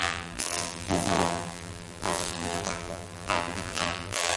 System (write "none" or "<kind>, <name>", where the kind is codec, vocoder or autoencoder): vocoder, BigVGAN v2